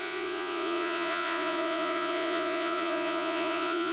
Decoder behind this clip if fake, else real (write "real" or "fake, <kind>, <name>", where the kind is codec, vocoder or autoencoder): fake, vocoder, Vocos